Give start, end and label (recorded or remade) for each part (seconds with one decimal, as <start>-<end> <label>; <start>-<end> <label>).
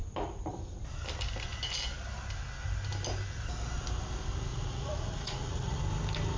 0.0-4.5 recorded; 4.5-5.8 remade; 5.8-6.4 recorded